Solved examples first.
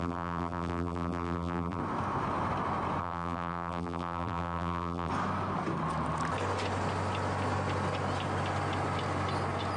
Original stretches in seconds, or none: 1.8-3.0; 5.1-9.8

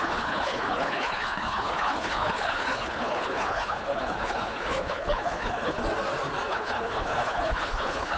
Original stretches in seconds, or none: 5.8-6.5

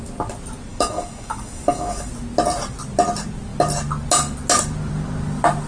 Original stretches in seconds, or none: 0.0-0.7; 2.1-5.7

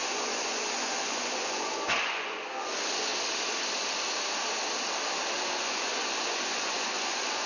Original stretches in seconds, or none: 3.1-5.6